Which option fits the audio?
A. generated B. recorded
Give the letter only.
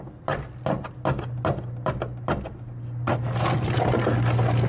B